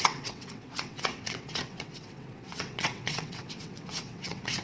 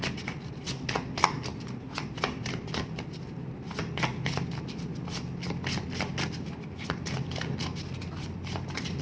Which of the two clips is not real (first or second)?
first